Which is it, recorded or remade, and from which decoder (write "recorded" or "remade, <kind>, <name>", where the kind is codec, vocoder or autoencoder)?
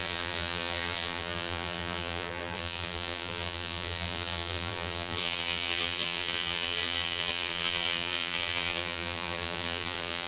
remade, vocoder, BigVGAN v2